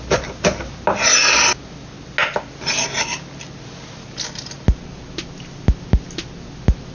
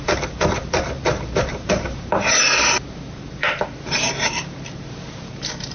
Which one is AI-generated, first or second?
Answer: second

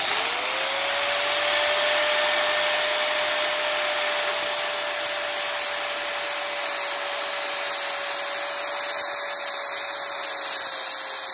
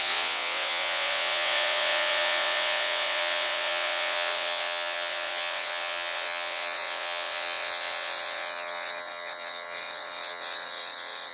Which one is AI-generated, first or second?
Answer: second